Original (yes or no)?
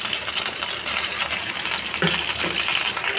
yes